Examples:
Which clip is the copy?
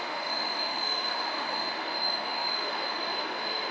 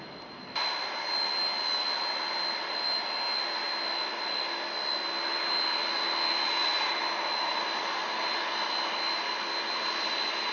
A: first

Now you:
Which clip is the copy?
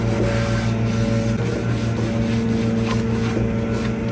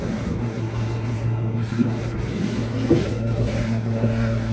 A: second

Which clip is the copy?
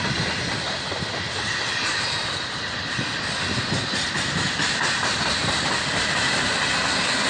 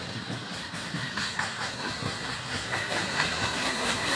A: second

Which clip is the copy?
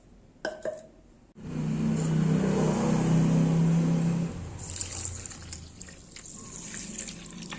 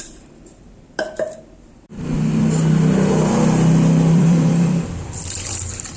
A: second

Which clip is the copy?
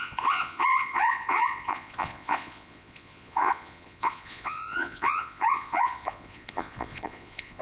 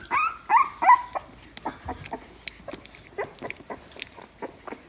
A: first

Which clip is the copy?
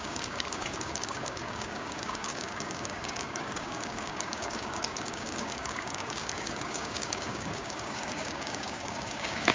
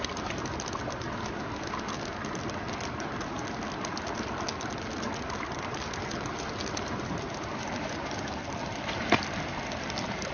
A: first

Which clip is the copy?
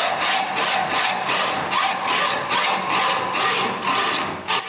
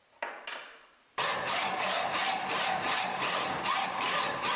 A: second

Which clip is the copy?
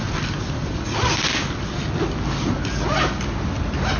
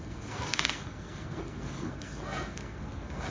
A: second